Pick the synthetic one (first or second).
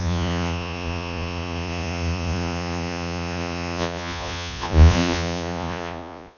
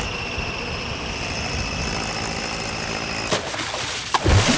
first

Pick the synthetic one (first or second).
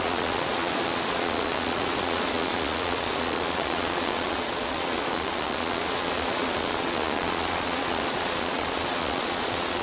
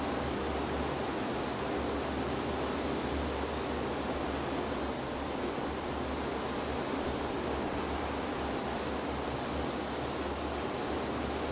first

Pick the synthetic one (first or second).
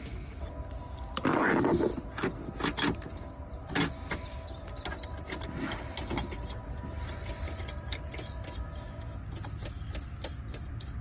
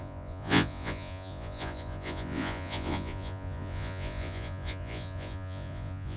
second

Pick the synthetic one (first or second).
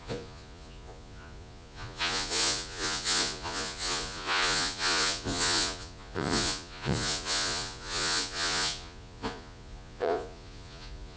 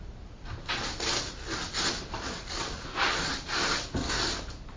first